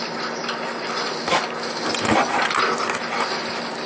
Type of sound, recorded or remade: recorded